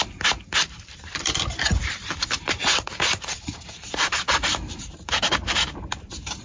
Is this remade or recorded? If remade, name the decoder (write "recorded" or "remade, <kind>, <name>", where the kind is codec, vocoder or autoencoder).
remade, vocoder, BigVGAN v2